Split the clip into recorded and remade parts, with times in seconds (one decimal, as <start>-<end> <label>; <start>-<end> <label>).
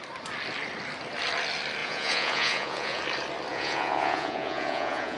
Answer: 0.0-1.8 recorded; 1.8-3.0 remade; 3.0-3.5 recorded; 3.5-5.2 remade